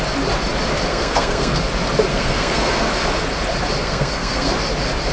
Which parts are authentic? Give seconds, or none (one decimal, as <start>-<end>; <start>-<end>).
0.0-0.9; 1.6-2.1; 2.9-3.8; 4.5-5.1